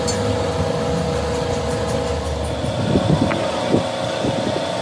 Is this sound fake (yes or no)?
no